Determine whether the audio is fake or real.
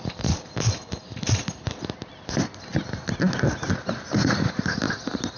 real